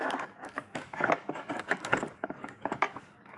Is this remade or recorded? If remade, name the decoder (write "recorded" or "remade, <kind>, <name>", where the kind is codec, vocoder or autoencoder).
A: remade, codec, DAC